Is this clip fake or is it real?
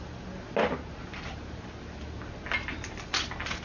real